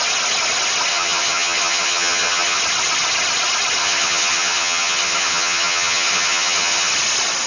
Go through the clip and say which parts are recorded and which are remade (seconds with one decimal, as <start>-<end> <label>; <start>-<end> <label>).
0.0-0.9 recorded; 0.9-2.6 remade; 2.6-3.8 recorded; 3.8-6.9 remade; 6.9-7.5 recorded